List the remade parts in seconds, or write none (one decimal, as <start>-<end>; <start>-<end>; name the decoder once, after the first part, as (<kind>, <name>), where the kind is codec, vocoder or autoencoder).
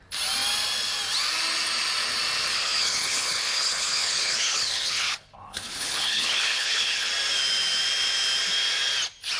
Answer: 2.5-7.1 (codec, HILCodec)